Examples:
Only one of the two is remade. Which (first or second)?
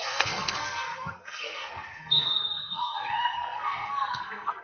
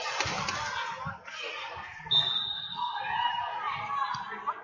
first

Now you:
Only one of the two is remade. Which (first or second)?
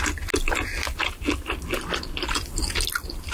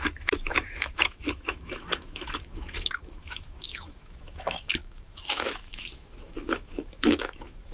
second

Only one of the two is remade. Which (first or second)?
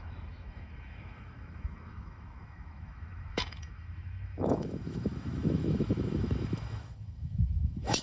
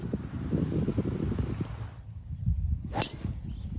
first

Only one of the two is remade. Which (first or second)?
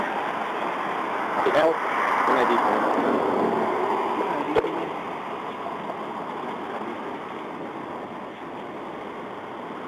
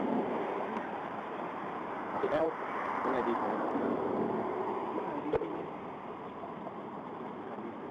second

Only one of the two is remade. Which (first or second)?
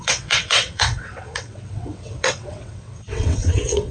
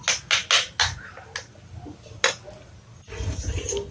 first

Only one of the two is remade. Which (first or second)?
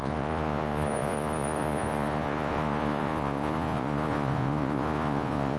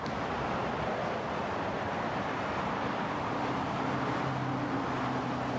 first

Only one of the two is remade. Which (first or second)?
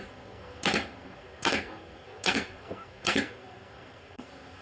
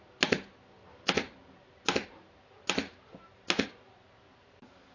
first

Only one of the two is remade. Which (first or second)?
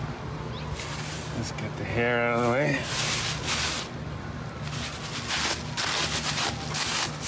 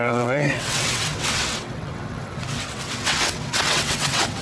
second